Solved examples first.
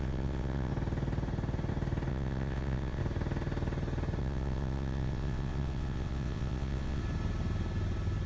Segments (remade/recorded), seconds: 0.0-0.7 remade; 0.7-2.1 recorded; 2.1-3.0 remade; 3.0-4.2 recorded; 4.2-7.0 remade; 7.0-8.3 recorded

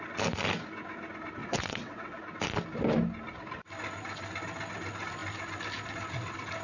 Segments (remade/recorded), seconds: 0.0-1.4 recorded; 1.4-2.2 remade; 2.2-6.6 recorded

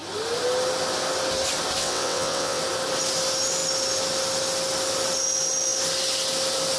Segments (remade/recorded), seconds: 0.0-1.8 recorded; 1.8-2.6 remade; 2.6-6.8 recorded